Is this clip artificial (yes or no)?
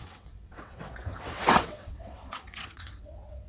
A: yes